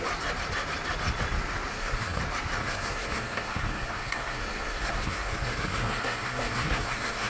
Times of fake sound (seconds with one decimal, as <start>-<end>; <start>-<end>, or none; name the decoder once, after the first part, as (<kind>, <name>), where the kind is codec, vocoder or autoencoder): 1.7-2.2 (codec, SNAC); 2.6-7.3

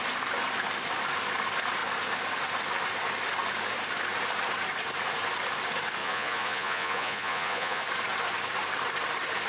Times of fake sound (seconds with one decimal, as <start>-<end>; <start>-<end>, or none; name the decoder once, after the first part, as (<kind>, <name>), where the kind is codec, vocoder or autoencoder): 6.0-7.8 (vocoder, Vocos)

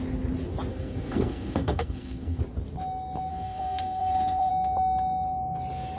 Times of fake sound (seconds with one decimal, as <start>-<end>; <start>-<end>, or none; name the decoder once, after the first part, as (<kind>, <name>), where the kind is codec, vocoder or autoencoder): 0.7-2.4 (codec, SNAC); 3.3-4.5

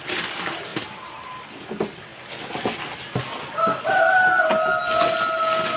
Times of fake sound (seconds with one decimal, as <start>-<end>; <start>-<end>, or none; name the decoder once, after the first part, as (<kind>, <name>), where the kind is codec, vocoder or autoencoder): 0.7-1.4 (vocoder, BigVGAN v2)

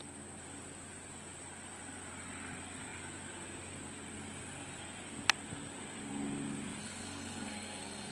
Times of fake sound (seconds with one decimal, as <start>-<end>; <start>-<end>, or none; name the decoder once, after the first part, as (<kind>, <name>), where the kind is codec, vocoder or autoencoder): 6.8-8.1 (codec, SNAC)

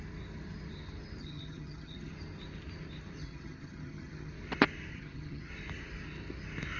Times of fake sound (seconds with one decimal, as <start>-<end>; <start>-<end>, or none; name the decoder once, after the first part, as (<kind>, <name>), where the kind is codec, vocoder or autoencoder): 1.2-2.1 (vocoder, HiFi-GAN); 3.2-4.3; 4.9-5.5